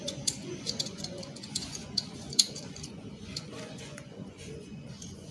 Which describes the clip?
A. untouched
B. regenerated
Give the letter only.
B